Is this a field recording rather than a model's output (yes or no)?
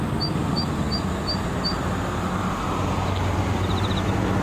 yes